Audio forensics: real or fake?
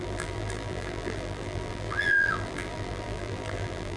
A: fake